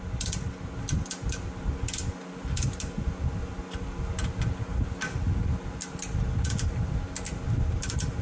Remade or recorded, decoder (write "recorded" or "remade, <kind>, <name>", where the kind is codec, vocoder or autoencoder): recorded